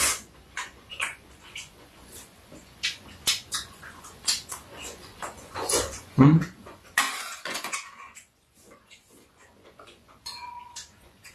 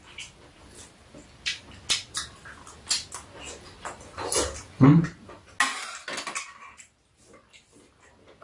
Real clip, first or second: second